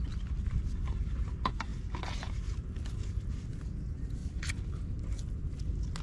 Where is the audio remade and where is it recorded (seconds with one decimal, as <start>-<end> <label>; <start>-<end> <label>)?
0.0-4.2 recorded; 4.2-5.0 remade; 5.0-6.0 recorded